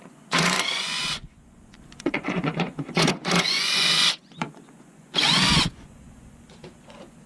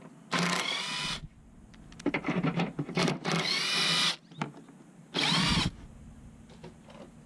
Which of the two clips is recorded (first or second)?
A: second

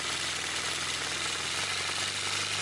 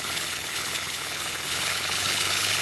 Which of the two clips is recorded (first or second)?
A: first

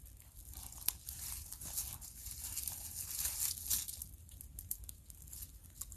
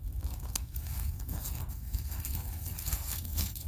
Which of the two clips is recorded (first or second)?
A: first